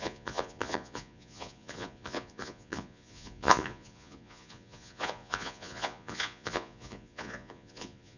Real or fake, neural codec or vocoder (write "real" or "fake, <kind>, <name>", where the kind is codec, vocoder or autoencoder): fake, vocoder, Vocos